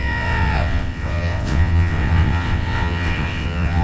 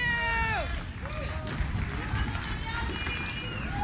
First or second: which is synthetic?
first